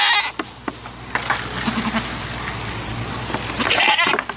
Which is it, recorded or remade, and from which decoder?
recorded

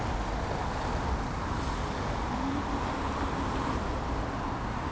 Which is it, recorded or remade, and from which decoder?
recorded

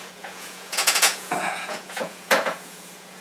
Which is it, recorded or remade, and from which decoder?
remade, vocoder, Vocos